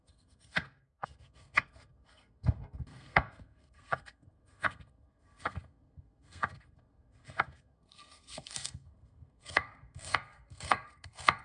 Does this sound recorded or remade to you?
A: remade